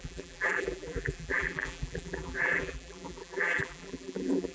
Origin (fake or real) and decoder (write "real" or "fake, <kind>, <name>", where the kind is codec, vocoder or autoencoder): fake, vocoder, BigVGAN v2